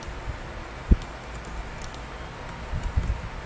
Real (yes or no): yes